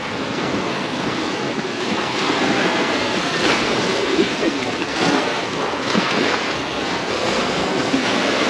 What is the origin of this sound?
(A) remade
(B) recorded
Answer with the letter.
A